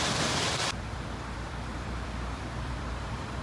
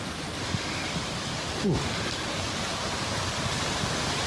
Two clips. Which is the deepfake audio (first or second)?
first